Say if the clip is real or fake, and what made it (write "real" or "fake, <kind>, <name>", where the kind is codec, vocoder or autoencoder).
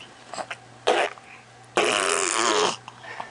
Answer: real